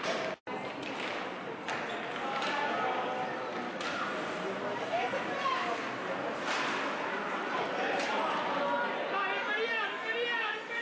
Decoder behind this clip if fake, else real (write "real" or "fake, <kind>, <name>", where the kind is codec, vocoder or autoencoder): real